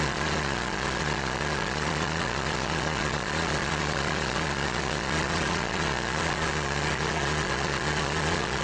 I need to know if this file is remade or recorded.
remade